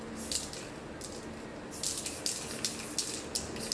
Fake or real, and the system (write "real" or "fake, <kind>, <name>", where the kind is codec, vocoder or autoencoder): real